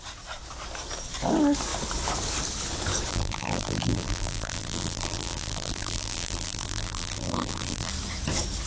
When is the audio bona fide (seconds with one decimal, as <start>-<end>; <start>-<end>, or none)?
0.0-3.1; 7.9-8.7